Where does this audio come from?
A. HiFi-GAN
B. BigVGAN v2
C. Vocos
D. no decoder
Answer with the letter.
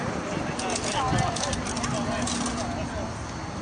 D